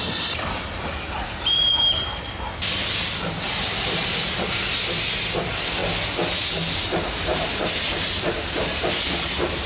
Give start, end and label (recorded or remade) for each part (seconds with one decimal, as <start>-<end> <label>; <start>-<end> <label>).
0.0-7.3 recorded; 7.3-9.0 remade; 9.0-9.7 recorded

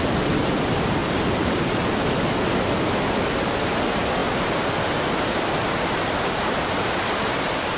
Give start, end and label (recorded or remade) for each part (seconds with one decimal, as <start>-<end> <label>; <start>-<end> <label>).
0.0-1.0 recorded; 1.0-2.0 remade; 2.0-7.8 recorded

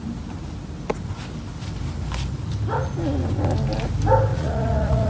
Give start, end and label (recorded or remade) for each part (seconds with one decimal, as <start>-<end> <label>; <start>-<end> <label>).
0.0-4.3 recorded; 4.3-5.1 remade